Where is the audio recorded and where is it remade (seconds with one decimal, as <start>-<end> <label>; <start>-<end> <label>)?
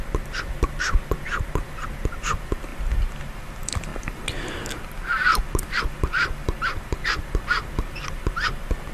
0.0-8.9 recorded